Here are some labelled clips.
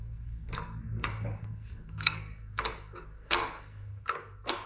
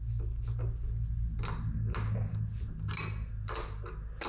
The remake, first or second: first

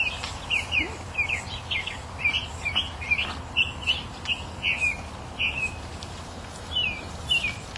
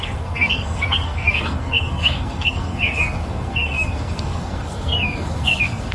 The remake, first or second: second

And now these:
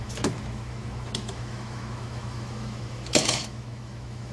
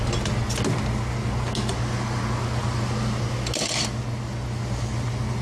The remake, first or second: first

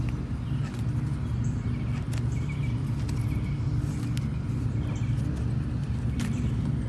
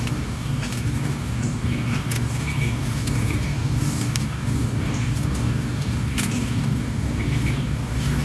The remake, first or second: second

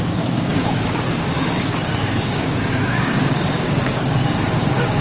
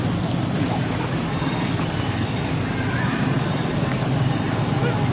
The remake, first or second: first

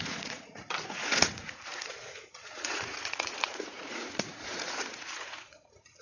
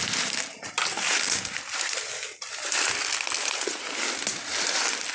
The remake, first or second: first